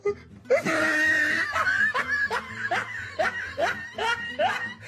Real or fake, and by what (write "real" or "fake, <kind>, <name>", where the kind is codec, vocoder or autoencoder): real